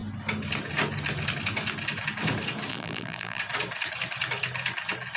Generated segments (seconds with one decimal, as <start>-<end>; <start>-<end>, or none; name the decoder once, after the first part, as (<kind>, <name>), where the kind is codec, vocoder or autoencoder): 2.7-3.4 (vocoder, BigVGAN v2)